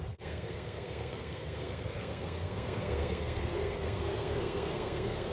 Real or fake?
fake